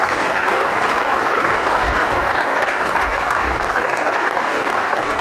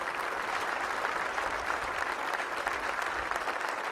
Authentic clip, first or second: second